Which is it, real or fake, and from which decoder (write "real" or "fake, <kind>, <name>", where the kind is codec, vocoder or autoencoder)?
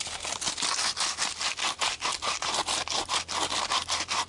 real